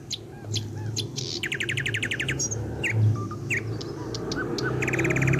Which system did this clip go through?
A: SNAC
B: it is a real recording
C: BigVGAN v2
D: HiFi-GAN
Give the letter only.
B